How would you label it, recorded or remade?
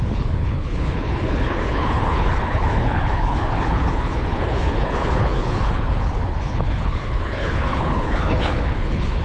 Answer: remade